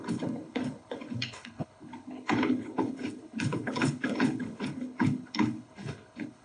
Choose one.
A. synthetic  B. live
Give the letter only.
A